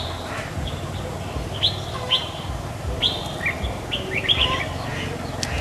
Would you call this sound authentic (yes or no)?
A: yes